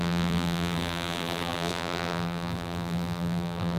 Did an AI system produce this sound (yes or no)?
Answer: yes